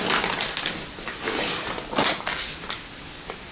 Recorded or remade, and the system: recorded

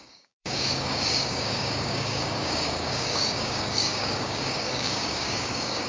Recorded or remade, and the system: remade, codec, DAC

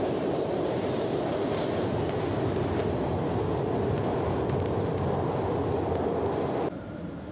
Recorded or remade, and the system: remade, vocoder, BigVGAN v2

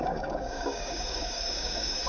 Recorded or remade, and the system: remade, codec, DAC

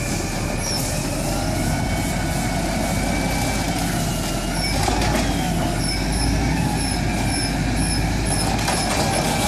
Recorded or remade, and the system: recorded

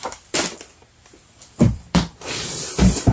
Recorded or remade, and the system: remade, vocoder, BigVGAN v2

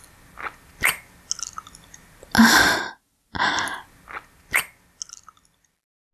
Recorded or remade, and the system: recorded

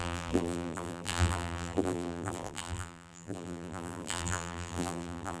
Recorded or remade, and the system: remade, vocoder, BigVGAN v2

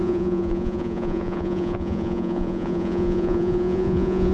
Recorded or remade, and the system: remade, vocoder, Vocos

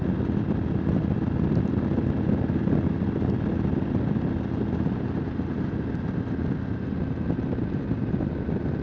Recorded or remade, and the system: recorded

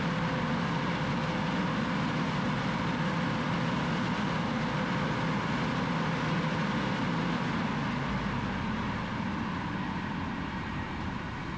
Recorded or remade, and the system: recorded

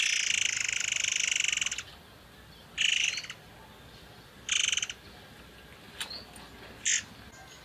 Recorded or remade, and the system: recorded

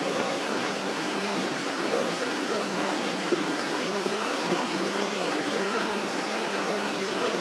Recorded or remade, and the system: remade, codec, SNAC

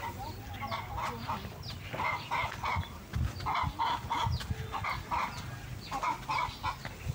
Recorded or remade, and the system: recorded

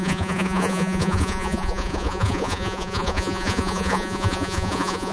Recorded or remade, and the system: remade, vocoder, Vocos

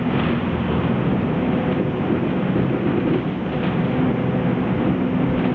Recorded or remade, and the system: recorded